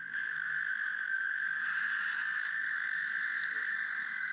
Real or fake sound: fake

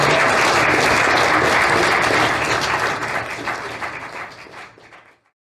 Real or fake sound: real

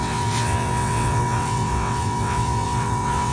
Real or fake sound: fake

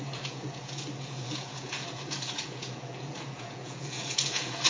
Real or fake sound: fake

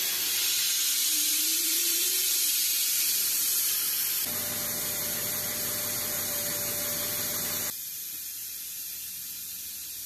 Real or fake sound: real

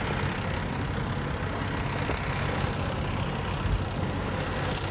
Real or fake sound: real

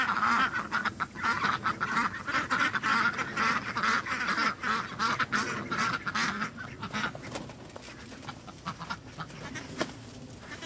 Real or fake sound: real